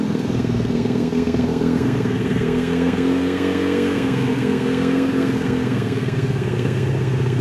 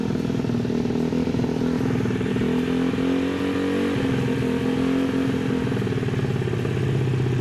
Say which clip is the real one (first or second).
second